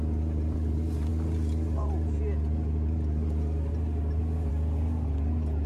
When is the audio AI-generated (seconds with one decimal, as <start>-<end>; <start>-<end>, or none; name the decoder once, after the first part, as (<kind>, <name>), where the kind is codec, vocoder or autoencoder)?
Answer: none